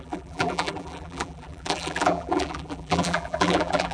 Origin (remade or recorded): remade